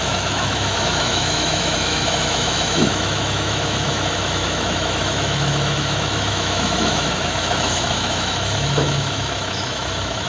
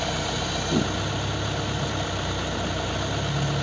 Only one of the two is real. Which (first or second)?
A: second